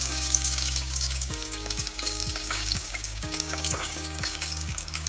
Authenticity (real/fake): fake